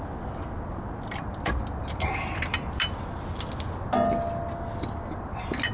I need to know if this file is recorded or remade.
recorded